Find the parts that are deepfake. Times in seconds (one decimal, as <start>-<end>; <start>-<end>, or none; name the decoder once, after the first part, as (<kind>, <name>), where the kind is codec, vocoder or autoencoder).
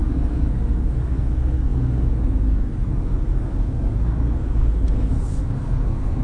0.0-6.2 (codec, SNAC)